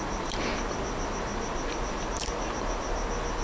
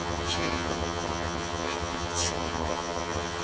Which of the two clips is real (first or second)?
first